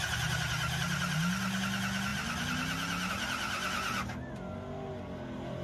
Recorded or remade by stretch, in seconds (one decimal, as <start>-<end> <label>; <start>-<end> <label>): 0.0-5.6 recorded